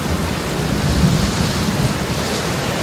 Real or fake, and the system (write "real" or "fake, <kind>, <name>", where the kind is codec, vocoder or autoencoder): real